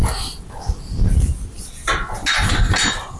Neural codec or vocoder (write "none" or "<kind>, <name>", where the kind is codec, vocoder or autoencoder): none